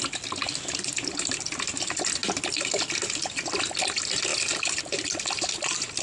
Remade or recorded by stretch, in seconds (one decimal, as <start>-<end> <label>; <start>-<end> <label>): 0.0-6.0 recorded